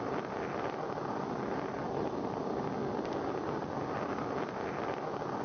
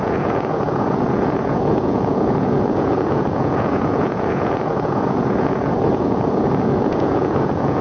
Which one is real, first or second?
first